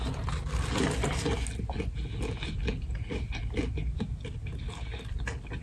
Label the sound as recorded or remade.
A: recorded